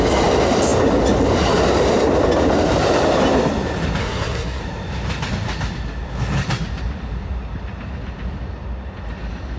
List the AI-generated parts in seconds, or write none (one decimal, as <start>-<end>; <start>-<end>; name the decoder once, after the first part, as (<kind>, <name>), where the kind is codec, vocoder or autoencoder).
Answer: 4.0-4.6 (codec, SNAC)